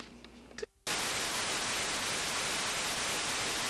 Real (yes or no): yes